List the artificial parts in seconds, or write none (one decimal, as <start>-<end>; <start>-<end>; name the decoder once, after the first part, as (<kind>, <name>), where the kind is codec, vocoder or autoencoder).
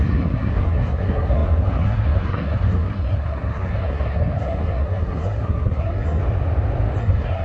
0.0-6.2 (codec, SNAC); 7.0-7.4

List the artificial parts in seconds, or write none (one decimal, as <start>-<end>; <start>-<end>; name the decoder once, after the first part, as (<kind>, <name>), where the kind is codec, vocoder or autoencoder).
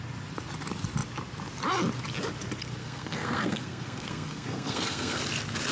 2.8-5.2 (codec, SNAC)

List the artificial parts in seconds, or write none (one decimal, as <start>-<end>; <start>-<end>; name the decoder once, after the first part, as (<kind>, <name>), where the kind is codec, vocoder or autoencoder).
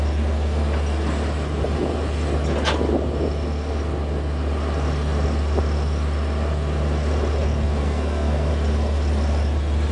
7.8-8.5 (codec, SNAC)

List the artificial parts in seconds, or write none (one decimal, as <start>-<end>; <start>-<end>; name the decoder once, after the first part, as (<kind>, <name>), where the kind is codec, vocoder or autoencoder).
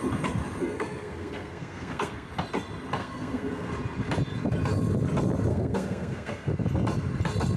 0.6-2.3 (codec, SNAC); 3.0-3.7; 5.5-6.5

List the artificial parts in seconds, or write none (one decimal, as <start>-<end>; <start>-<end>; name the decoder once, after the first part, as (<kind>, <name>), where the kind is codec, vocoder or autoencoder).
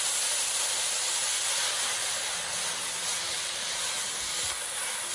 none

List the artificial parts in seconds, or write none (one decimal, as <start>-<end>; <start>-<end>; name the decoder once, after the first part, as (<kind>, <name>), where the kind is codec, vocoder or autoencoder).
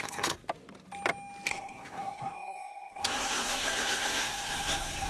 0.0-0.4 (codec, SNAC); 1.5-5.1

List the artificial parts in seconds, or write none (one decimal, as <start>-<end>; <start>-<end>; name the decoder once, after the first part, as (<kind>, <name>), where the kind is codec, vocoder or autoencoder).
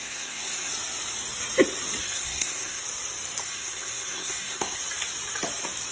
0.0-0.7 (codec, SNAC); 2.0-2.8; 3.4-4.8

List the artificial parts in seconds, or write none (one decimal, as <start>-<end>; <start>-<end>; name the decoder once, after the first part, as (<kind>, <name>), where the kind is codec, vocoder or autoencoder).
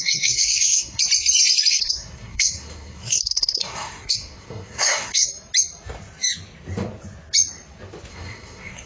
0.0-1.0 (codec, SNAC); 1.7-5.3; 8.1-8.9